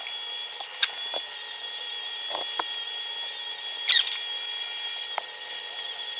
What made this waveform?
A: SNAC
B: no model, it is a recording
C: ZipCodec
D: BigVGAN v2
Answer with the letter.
B